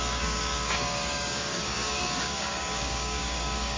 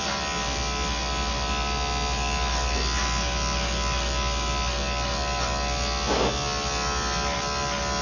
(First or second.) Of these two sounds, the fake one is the first